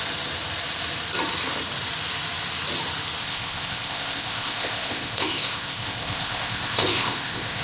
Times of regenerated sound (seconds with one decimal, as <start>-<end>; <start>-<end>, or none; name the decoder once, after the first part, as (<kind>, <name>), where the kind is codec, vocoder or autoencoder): 3.2-7.6 (codec, ZipCodec)